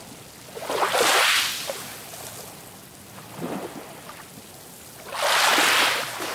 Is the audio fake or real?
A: real